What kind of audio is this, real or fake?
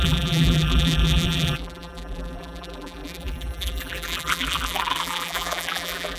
fake